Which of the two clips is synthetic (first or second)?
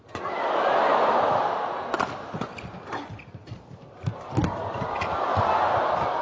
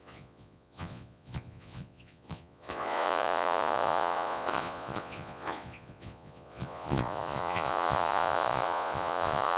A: second